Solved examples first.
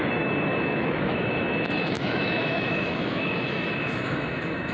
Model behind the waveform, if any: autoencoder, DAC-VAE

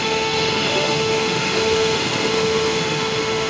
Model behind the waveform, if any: autoencoder, DAC-VAE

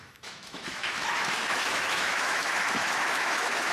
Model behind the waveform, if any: autoencoder, DAC-VAE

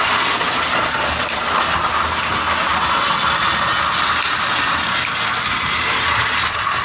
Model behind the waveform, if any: none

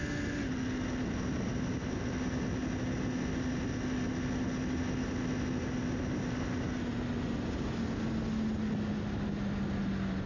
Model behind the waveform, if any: none